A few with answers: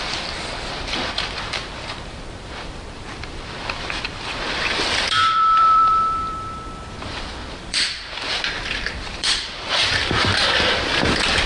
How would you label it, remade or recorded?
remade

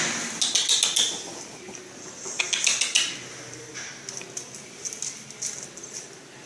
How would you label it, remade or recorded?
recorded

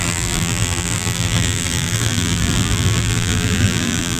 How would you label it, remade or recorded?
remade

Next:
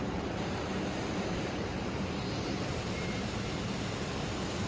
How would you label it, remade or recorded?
remade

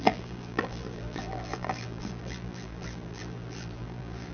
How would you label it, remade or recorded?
remade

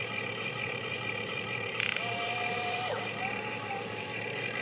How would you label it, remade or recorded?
remade